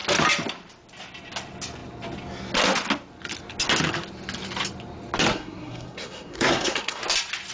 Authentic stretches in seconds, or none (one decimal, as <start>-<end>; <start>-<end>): 0.0-5.3; 7.0-7.5